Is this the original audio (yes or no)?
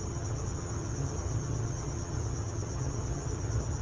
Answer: no